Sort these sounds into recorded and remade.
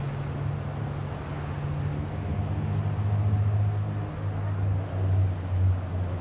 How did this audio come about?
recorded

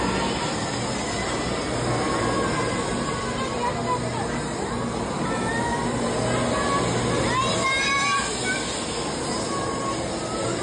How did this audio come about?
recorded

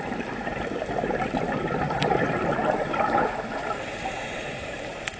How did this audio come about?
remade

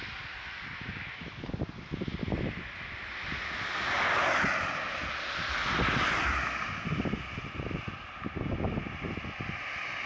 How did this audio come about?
recorded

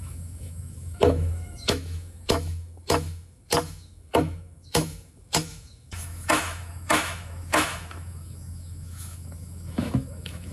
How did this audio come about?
remade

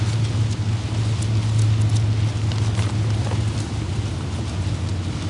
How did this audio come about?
recorded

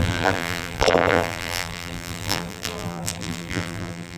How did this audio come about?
remade